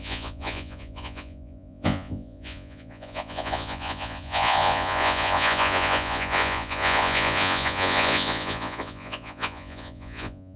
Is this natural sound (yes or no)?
no